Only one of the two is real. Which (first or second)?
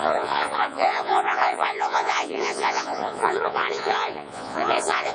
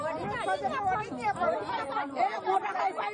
second